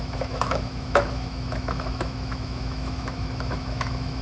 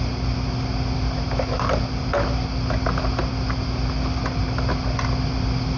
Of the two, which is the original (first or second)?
second